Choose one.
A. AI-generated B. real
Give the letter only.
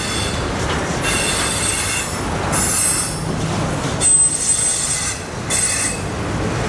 B